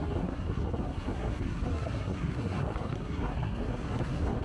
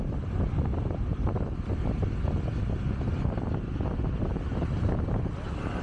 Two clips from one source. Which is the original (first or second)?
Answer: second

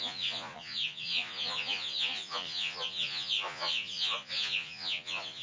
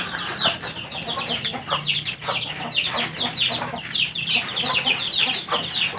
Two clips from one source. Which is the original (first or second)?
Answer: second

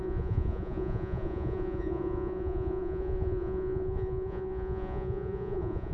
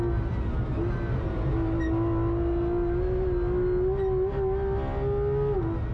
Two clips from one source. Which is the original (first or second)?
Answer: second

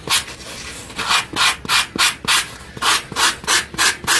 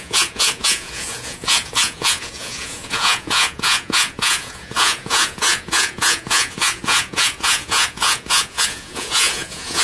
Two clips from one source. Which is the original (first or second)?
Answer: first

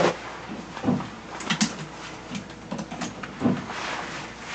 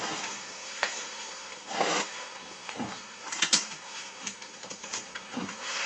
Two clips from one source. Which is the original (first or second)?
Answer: first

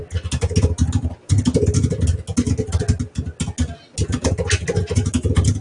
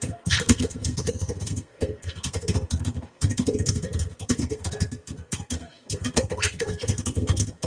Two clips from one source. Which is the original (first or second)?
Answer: first